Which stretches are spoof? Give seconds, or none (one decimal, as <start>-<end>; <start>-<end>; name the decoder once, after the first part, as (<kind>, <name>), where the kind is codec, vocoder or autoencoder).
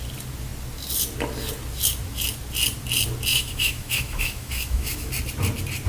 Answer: 3.3-5.1 (autoencoder, DAC-VAE)